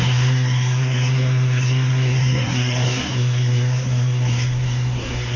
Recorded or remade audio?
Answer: remade